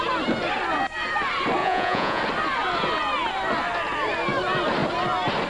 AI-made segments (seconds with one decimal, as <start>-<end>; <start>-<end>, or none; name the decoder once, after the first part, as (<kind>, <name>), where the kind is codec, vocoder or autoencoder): 1.6-2.2 (vocoder, Vocos)

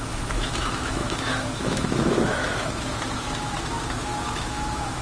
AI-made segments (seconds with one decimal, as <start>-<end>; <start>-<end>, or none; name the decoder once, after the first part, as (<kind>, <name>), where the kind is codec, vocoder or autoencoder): 0.0-5.0 (autoencoder, DAC-VAE)

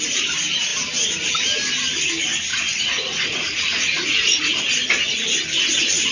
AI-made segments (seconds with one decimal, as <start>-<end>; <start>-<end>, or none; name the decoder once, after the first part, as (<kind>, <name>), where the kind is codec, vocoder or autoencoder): 2.5-4.6 (vocoder, Vocos)

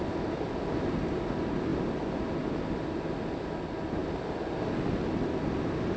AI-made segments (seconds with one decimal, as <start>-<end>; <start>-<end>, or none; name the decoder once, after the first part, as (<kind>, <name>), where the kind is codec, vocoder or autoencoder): none

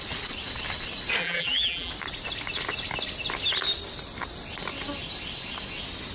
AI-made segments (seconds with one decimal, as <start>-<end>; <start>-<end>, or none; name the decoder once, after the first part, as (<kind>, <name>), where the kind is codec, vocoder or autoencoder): 1.2-1.9 (vocoder, BigVGAN v2)